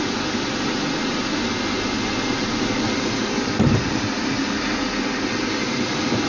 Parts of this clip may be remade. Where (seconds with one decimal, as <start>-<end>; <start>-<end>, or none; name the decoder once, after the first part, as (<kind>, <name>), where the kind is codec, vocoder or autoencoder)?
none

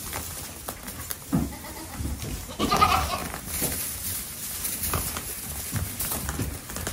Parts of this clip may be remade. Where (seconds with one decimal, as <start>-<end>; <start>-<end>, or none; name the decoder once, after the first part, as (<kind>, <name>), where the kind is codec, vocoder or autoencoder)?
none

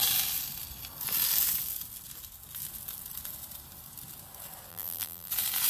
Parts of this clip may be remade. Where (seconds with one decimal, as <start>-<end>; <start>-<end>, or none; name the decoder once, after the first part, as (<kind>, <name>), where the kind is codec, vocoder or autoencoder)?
4.7-5.3 (vocoder, BigVGAN v2)

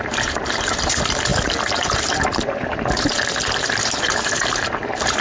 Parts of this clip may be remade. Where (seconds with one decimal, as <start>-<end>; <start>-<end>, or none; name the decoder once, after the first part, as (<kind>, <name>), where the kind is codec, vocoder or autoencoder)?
0.0-5.2 (vocoder, BigVGAN v2)